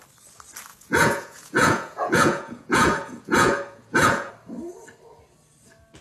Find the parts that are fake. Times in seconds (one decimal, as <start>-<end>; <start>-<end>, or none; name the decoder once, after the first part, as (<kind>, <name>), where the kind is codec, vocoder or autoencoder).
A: 0.7-4.3 (vocoder, Vocos)